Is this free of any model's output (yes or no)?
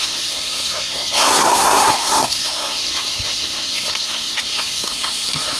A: no